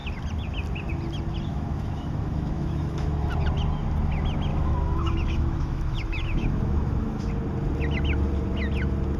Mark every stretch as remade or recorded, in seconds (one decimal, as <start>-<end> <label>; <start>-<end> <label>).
0.0-1.5 recorded; 1.5-3.3 remade; 3.3-4.5 recorded; 4.5-7.3 remade; 7.3-9.2 recorded